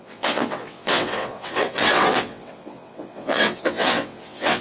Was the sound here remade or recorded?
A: remade